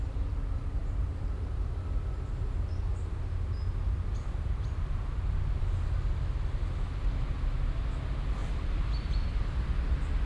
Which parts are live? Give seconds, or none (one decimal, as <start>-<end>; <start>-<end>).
0.0-10.3